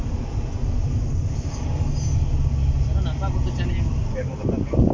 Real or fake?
real